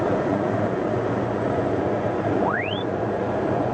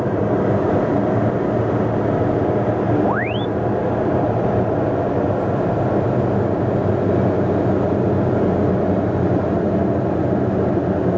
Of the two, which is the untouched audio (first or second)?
second